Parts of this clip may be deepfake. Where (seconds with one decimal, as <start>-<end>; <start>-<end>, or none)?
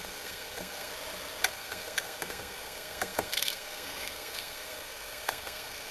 0.0-0.9; 1.5-5.9